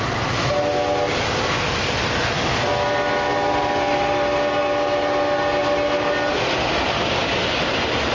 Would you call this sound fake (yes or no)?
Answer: no